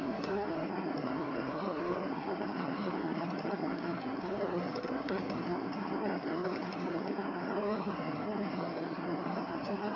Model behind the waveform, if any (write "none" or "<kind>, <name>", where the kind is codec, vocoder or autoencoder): codec, SNAC